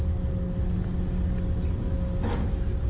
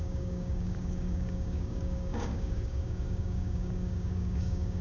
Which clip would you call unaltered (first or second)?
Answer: first